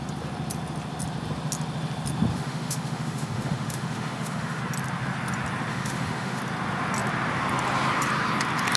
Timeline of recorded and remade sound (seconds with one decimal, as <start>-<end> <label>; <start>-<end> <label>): 0.0-2.3 recorded; 2.3-4.6 remade; 4.6-5.7 recorded; 5.7-6.4 remade; 6.4-8.8 recorded